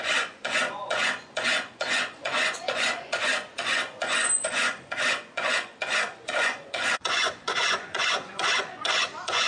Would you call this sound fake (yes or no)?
yes